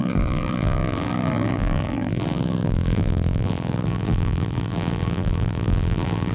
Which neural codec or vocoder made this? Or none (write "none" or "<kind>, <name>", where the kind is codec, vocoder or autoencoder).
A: vocoder, BigVGAN v2